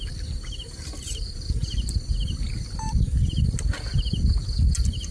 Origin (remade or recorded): recorded